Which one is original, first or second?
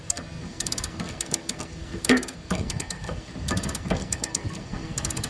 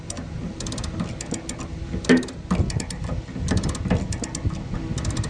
second